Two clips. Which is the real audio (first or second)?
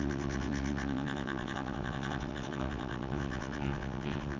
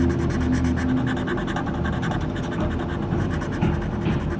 second